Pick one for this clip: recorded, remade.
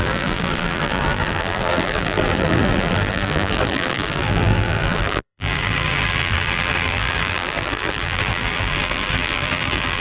remade